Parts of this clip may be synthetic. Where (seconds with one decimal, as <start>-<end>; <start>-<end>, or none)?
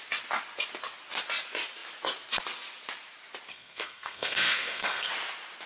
3.5-5.1